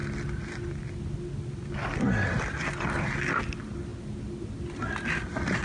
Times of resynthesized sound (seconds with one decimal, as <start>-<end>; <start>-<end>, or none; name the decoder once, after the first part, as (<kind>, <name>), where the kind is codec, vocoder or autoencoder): none